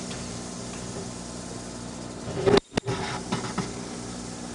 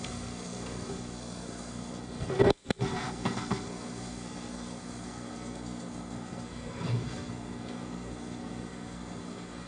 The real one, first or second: first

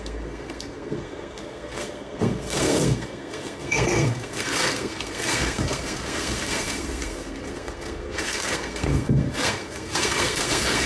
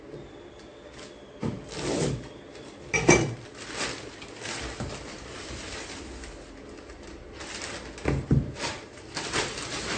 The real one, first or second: second